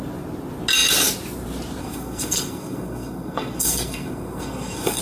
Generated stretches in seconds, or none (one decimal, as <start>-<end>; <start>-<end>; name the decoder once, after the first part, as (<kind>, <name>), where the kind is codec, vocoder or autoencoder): 1.8-5.0 (codec, SNAC)